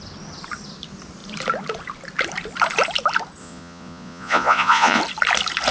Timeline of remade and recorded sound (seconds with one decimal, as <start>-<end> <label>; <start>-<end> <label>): 0.0-3.4 recorded; 3.4-5.0 remade; 5.0-5.7 recorded